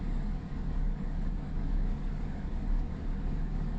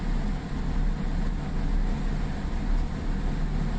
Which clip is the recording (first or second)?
second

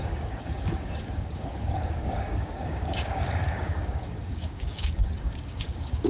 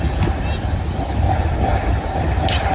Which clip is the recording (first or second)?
second